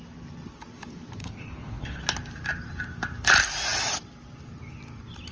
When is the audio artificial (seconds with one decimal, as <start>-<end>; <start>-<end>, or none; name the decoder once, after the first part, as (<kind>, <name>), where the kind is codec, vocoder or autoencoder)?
1.2-2.0 (codec, HILCodec)